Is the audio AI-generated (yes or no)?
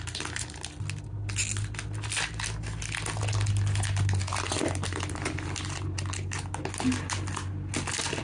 no